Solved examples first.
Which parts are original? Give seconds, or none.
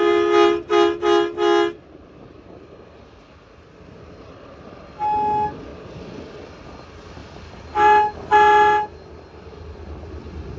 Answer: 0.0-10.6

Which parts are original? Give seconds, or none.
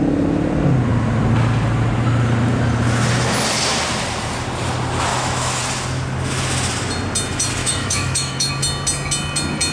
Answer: 0.0-5.1; 5.6-7.6; 8.5-9.7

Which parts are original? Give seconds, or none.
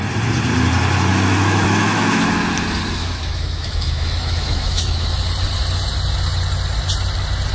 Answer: 0.0-1.1; 2.2-3.0; 5.2-7.5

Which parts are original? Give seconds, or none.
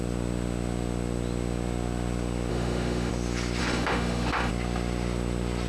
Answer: 0.0-2.5; 3.1-3.6; 4.5-5.7